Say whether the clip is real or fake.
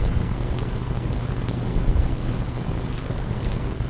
fake